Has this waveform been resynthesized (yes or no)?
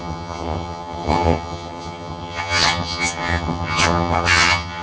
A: yes